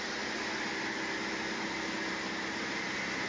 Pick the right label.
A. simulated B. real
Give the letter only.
B